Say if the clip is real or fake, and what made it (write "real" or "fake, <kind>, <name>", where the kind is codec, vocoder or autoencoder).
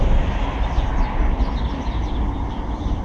real